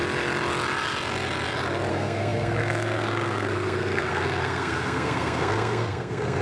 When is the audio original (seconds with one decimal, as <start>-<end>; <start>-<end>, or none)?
0.0-1.9